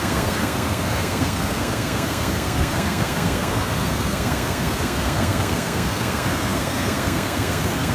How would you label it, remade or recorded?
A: remade